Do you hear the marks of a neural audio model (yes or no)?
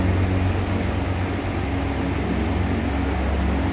no